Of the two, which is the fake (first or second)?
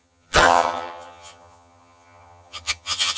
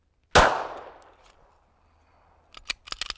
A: first